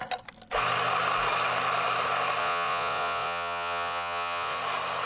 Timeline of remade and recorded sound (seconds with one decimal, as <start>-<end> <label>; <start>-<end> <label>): 0.0-2.4 recorded; 2.4-4.6 remade; 4.6-5.1 recorded